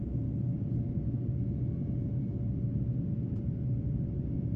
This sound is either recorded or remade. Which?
recorded